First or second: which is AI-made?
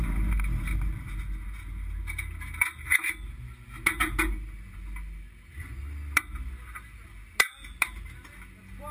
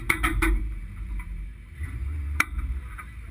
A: second